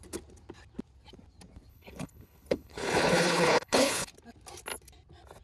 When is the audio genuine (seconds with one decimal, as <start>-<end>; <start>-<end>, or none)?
0.0-1.7; 4.1-5.4